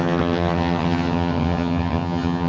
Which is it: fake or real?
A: fake